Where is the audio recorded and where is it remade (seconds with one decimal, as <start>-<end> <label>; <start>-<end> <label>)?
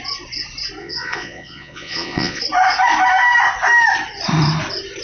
0.0-0.8 recorded; 0.8-2.4 remade; 2.4-5.0 recorded